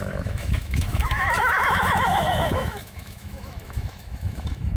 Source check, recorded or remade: remade